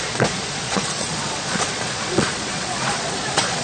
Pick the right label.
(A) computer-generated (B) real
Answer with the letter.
A